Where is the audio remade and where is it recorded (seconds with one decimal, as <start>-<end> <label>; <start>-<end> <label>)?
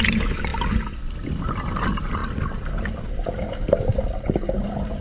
0.0-5.0 recorded